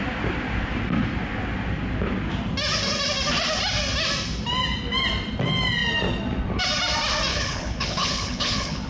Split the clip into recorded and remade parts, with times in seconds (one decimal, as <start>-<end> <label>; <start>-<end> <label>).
0.0-7.3 recorded; 7.3-8.9 remade